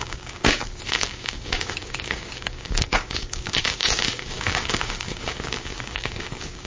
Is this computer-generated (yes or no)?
yes